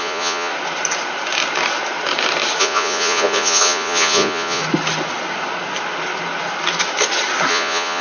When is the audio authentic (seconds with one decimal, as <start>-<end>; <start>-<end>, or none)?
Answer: 0.5-2.6; 4.6-7.5